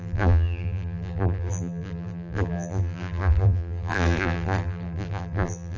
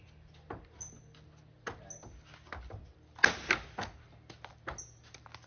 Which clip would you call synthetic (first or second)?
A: first